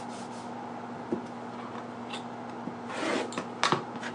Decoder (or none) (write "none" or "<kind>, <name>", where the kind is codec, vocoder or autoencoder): none